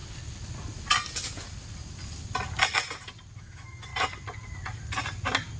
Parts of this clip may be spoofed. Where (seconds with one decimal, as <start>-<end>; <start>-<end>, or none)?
3.4-3.9